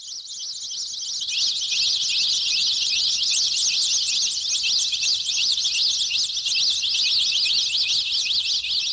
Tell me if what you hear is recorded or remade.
recorded